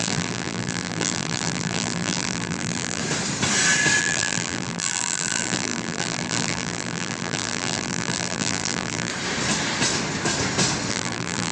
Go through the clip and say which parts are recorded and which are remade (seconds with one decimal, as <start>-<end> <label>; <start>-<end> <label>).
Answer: 0.0-3.0 remade; 3.0-4.0 recorded; 4.0-9.1 remade; 9.1-10.9 recorded; 10.9-11.5 remade